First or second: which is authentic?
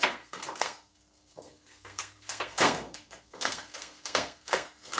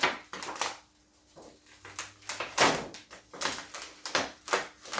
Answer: second